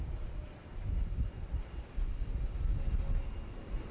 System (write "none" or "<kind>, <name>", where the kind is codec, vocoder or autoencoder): none